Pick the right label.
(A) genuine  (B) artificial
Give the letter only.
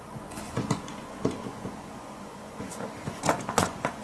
B